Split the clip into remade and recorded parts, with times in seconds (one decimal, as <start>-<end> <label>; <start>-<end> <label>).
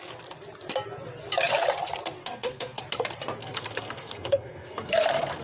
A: 0.0-2.2 recorded; 2.2-2.8 remade; 2.8-3.4 recorded; 3.4-5.4 remade